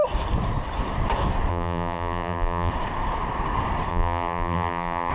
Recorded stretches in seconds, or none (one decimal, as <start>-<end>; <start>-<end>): 0.0-1.5; 2.7-3.9